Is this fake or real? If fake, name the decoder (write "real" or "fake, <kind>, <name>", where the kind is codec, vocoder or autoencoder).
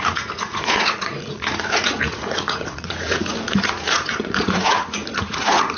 fake, vocoder, Vocos